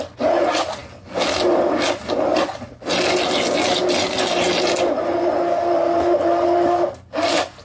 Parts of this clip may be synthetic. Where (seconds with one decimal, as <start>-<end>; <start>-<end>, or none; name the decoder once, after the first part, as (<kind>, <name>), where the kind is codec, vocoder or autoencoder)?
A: none